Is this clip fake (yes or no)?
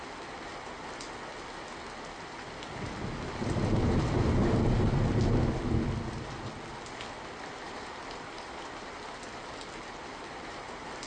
no